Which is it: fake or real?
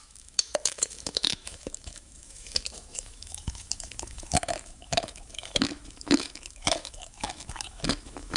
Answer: fake